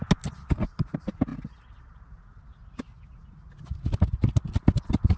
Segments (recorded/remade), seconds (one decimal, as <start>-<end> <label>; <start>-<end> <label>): 0.0-5.2 recorded